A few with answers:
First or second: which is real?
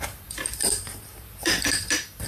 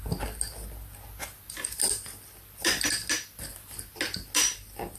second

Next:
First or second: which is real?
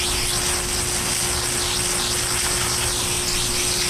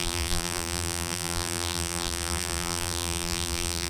first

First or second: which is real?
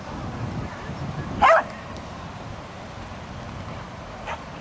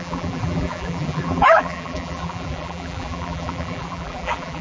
first